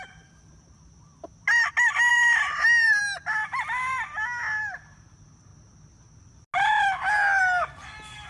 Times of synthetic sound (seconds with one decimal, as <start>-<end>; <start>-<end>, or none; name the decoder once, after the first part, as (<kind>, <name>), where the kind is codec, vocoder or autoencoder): 2.1-3.0 (vocoder, BigVGAN v2)